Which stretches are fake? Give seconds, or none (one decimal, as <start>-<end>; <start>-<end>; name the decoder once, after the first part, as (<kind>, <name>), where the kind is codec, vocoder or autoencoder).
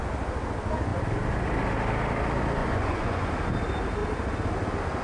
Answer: 2.6-3.3 (vocoder, Vocos)